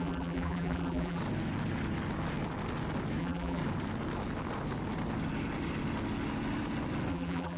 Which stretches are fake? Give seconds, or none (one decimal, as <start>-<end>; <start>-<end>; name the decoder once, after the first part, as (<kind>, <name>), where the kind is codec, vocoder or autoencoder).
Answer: 0.0-1.2 (vocoder, BigVGAN v2); 3.2-3.6; 7.1-7.6